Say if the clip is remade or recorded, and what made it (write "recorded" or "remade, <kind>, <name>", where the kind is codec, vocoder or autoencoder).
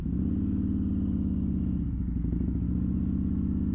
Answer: recorded